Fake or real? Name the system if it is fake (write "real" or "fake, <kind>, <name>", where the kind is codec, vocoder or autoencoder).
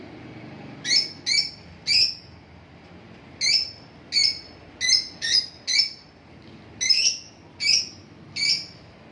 real